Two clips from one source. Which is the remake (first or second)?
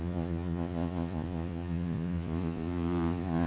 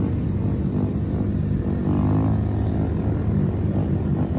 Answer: first